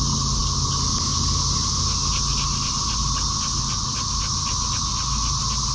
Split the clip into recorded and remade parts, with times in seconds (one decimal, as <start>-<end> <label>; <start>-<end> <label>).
0.0-5.7 recorded